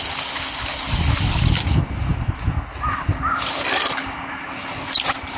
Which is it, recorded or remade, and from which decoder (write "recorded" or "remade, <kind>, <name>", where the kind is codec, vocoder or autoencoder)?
recorded